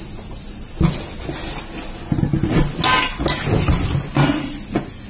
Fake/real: real